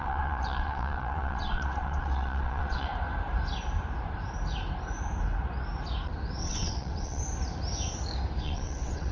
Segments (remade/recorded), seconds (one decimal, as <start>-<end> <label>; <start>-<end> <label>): 0.0-2.9 remade; 2.9-6.4 recorded; 6.4-7.2 remade; 7.2-8.4 recorded; 8.4-9.1 remade

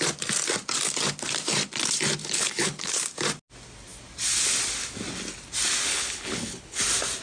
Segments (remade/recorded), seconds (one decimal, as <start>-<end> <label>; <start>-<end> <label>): 0.0-2.2 recorded; 2.2-3.0 remade; 3.0-5.9 recorded; 5.9-6.8 remade; 6.8-7.2 recorded

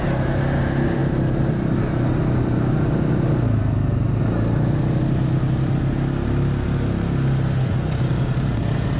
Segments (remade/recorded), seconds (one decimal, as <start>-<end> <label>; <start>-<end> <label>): 0.0-9.0 recorded

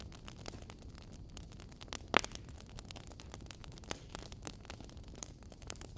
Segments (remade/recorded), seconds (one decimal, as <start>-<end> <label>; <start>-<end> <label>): 0.0-3.6 recorded; 3.6-4.1 remade; 4.1-5.2 recorded; 5.2-6.0 remade